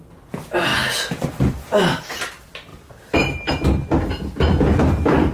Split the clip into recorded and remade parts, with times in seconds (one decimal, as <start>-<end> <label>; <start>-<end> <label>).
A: 0.0-5.3 recorded